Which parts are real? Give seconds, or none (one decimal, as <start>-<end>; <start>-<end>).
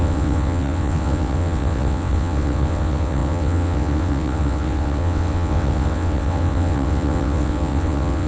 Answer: none